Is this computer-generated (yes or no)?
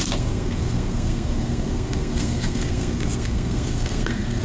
yes